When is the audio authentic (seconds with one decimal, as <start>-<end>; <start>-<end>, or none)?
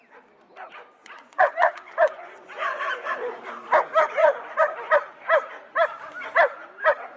0.0-1.0; 2.8-4.2; 4.7-7.2